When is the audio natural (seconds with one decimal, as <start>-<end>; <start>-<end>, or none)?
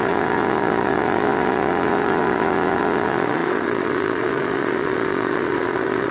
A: none